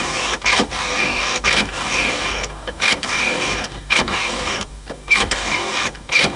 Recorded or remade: remade